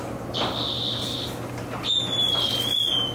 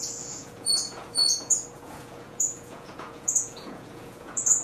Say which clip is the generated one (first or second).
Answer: second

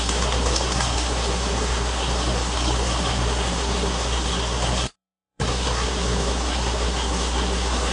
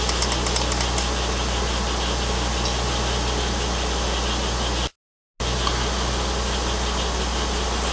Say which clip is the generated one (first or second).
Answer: first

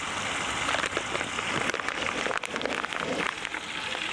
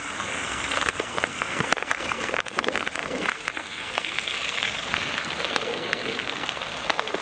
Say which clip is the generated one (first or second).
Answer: second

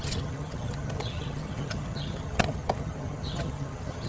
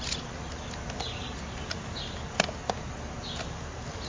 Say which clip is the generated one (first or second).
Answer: first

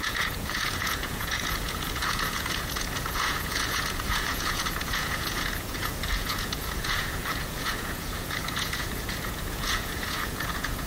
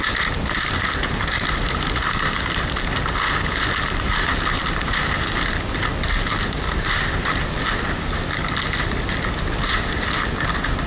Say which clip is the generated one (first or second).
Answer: first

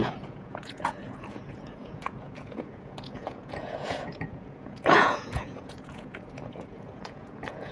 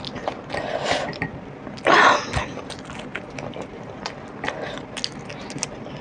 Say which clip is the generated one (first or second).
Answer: first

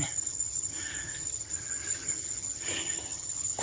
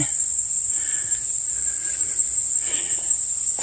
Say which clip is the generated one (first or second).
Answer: first